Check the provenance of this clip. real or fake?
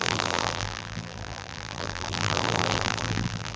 fake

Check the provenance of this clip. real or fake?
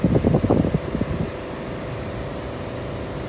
real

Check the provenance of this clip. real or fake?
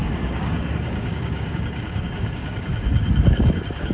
fake